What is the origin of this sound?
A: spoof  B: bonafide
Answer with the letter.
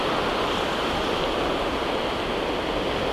B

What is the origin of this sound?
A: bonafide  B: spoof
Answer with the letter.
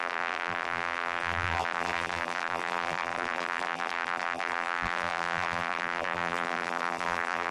B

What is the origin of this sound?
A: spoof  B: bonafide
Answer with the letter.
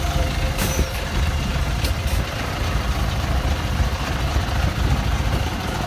A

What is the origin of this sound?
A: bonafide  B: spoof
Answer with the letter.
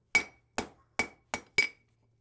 A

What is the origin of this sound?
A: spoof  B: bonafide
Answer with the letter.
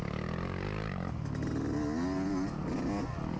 B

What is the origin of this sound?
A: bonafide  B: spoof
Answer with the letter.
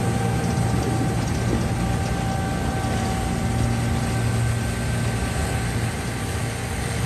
A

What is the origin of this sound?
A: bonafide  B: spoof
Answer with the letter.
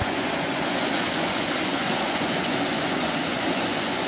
B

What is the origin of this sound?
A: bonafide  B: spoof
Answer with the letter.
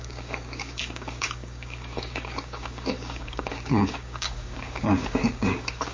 B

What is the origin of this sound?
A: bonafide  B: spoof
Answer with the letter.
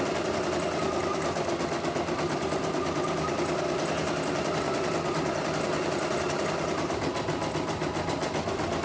A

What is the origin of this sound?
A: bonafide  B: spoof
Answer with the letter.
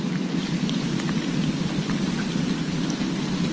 A